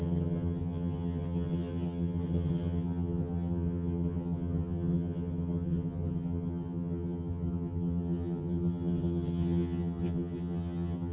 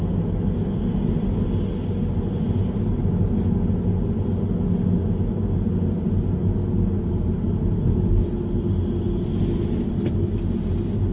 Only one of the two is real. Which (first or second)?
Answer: second